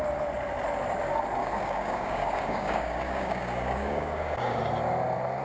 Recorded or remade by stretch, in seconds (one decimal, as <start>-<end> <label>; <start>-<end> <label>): 0.0-1.4 recorded; 1.4-4.6 remade; 4.6-5.4 recorded